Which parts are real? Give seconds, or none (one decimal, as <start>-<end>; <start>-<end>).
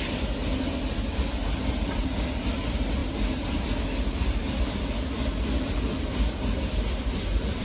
0.0-0.4; 1.6-7.6